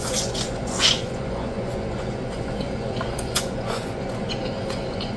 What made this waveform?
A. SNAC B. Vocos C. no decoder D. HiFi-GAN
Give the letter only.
B